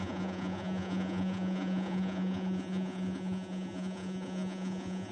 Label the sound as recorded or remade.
remade